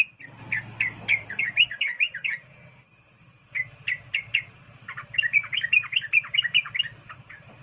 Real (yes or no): yes